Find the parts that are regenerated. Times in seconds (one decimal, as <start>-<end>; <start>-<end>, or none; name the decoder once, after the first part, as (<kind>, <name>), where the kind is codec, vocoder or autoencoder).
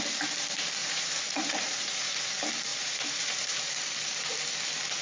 0.8-2.3 (vocoder, Vocos); 2.7-3.8